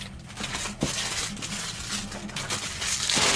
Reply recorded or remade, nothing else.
recorded